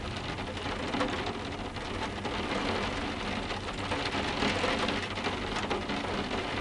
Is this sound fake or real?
real